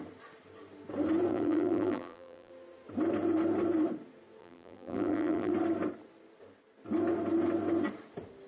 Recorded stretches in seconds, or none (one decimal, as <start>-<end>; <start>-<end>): 0.0-1.3; 2.5-4.4; 5.5-8.5